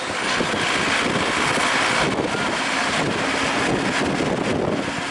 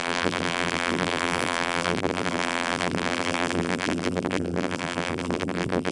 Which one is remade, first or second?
second